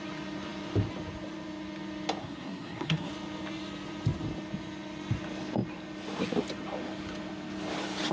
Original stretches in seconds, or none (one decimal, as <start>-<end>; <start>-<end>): 0.0-2.2; 3.1-8.1